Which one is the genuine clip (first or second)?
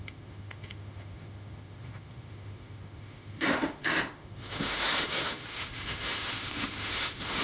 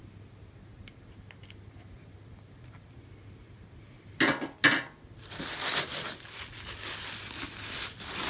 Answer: second